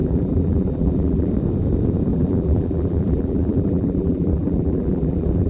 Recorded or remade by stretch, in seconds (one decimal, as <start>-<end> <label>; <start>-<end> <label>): 0.0-1.3 remade; 1.3-2.1 recorded; 2.1-5.5 remade